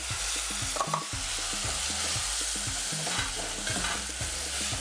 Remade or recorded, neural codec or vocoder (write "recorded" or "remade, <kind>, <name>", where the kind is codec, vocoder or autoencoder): recorded